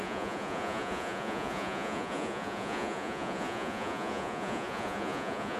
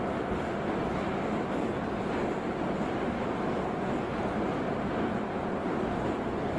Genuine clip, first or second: second